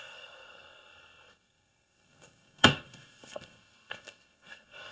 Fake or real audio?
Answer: fake